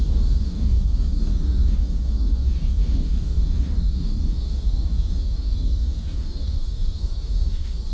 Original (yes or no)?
no